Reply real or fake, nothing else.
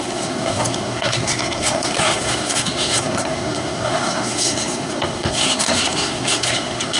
fake